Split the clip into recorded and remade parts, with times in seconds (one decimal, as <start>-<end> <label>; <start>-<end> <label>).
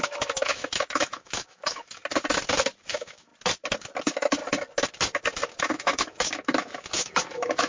0.0-2.0 remade; 2.0-2.9 recorded; 2.9-3.3 remade; 3.3-4.0 recorded; 4.0-4.4 remade; 4.4-5.6 recorded; 5.6-7.7 remade